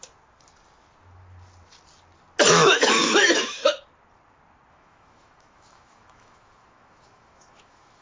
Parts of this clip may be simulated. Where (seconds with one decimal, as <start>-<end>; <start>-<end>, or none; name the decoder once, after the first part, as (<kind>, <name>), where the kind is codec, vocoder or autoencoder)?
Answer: 2.5-3.6 (autoencoder, DAC-VAE); 4.7-8.0